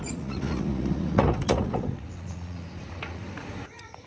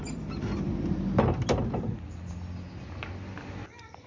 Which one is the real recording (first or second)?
second